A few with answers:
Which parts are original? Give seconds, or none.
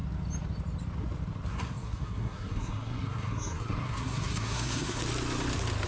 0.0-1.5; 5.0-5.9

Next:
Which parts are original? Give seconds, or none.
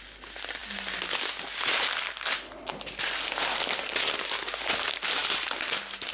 0.0-6.1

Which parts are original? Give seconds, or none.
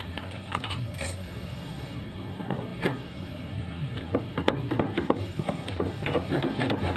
none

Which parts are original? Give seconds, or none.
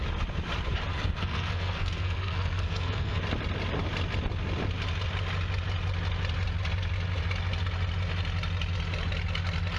0.0-0.9; 3.2-9.8